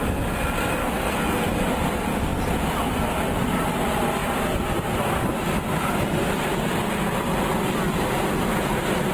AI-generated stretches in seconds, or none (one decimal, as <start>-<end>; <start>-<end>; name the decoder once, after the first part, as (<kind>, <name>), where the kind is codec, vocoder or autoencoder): 0.8-1.4 (codec, SNAC)